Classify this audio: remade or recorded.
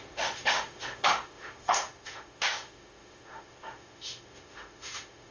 remade